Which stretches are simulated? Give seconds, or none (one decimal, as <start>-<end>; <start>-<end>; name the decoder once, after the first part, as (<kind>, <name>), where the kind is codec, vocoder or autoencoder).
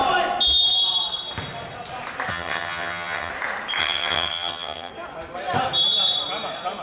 2.3-3.3 (vocoder, HiFi-GAN); 3.8-4.9